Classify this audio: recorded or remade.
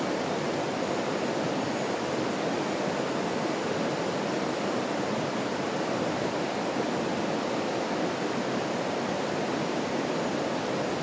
recorded